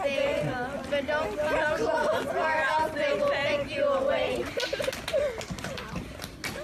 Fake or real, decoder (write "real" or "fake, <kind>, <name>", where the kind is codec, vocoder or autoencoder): real